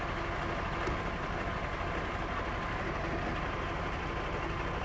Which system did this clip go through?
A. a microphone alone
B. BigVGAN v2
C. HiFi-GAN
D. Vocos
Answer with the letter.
A